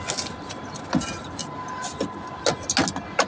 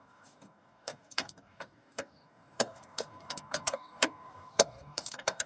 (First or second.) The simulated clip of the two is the second